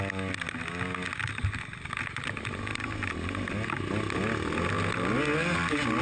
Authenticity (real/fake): real